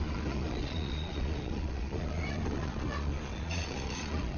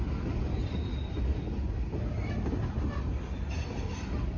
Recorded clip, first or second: second